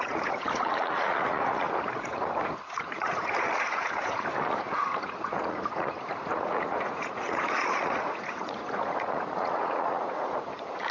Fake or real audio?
fake